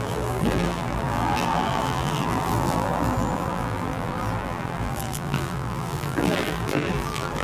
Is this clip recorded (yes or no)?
no